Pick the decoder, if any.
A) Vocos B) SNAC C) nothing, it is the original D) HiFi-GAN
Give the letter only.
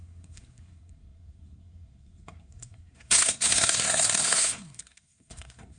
B